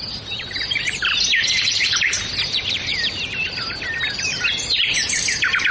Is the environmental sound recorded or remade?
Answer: remade